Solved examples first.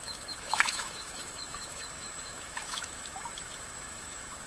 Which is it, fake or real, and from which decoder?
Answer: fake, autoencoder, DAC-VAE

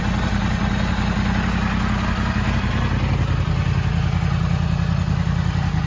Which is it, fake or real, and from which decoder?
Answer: real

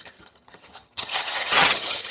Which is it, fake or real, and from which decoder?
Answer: fake, vocoder, HiFi-GAN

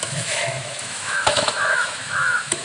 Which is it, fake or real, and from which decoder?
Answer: fake, autoencoder, DAC-VAE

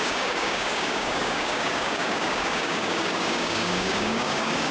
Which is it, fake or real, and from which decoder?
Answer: fake, codec, DAC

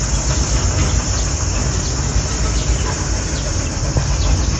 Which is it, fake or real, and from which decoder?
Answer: real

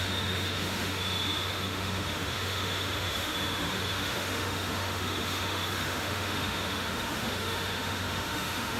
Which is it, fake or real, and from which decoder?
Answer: fake, autoencoder, DAC-VAE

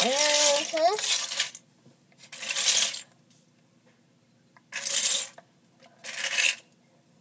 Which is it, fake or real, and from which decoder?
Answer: real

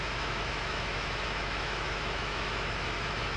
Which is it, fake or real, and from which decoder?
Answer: fake, autoencoder, DAC-VAE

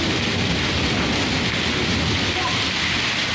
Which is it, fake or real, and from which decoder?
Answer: real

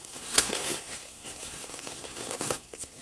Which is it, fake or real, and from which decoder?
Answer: fake, codec, SNAC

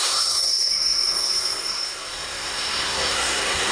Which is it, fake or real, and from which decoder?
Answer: fake, codec, SNAC